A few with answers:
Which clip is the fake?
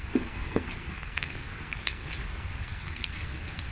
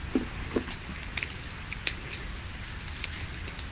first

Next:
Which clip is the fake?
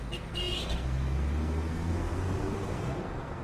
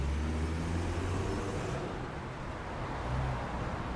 first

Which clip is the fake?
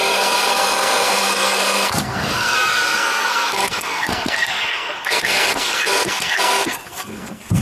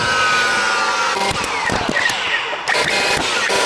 first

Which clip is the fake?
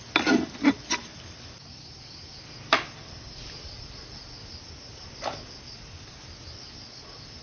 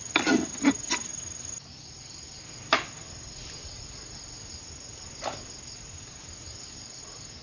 second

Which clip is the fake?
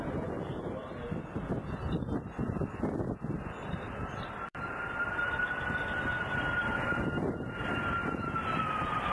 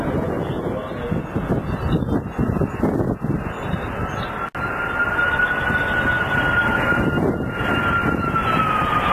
first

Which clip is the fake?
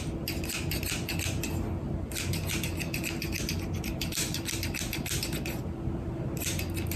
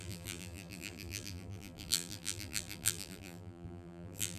second